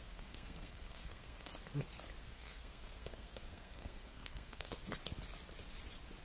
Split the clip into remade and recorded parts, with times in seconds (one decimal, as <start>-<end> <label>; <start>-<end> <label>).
0.0-1.5 remade; 1.5-2.2 recorded; 2.2-4.8 remade; 4.8-6.2 recorded